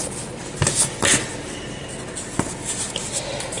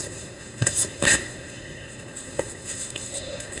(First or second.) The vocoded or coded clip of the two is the second